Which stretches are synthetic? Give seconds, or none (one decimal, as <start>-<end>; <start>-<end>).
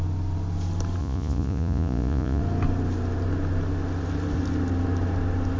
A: 1.0-2.4